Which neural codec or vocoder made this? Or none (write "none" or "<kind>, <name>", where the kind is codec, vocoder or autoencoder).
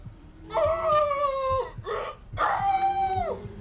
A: none